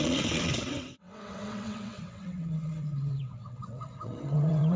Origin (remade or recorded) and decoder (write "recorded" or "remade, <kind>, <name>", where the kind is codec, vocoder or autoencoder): remade, vocoder, WaveNeXt